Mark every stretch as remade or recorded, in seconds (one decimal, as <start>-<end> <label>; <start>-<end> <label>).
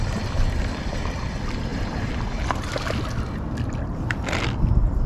0.0-5.1 recorded